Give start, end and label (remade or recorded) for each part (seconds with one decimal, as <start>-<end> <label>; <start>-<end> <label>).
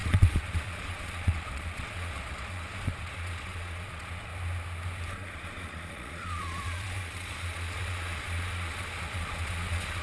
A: 0.0-4.3 remade; 4.3-5.1 recorded; 5.1-10.0 remade